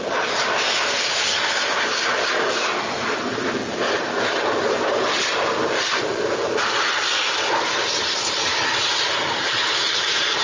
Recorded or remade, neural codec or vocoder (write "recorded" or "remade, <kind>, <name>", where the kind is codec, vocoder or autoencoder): recorded